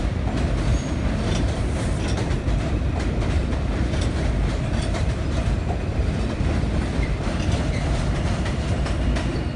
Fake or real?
fake